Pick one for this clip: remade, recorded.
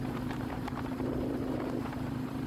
remade